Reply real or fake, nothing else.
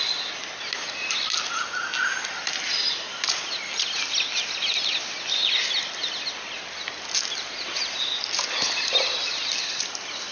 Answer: real